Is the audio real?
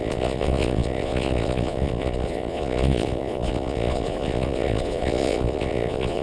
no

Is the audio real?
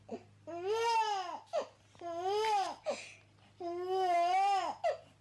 yes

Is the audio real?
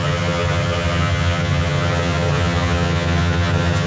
no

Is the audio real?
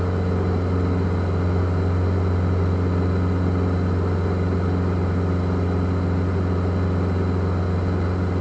yes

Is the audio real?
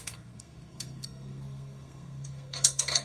no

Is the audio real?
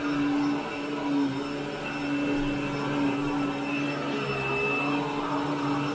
yes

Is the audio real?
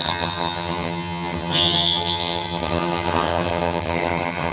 no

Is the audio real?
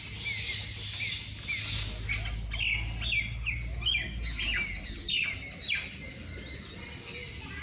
yes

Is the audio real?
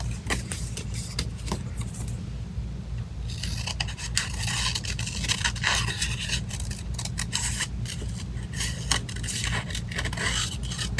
yes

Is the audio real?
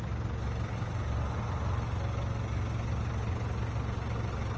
yes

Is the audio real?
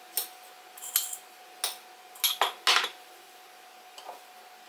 yes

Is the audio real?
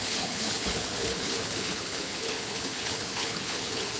no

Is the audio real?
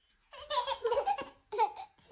yes